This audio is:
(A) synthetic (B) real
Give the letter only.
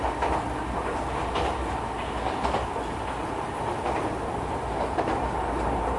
B